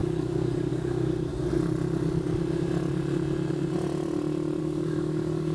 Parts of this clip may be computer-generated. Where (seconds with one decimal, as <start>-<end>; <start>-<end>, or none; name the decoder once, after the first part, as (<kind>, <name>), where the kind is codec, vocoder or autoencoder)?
0.0-1.3 (codec, DAC); 4.6-5.5